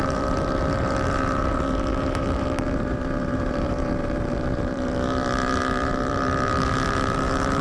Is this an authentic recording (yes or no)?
no